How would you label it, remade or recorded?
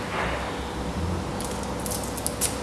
recorded